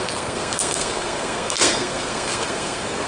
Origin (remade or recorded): remade